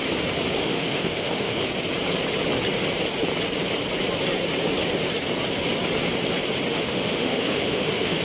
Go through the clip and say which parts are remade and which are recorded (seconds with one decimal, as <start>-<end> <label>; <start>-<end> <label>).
0.0-0.6 recorded; 0.6-1.6 remade; 1.6-6.7 recorded; 6.7-8.2 remade